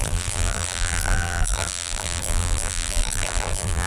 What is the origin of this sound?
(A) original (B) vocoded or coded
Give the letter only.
B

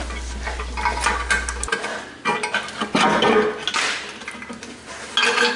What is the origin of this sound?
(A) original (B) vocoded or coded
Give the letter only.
A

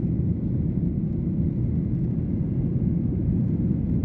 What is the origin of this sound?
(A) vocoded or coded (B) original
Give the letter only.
B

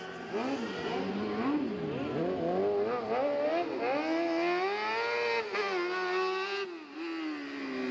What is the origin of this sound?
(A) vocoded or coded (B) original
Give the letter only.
B